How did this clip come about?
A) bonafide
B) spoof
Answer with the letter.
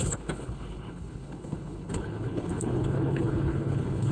B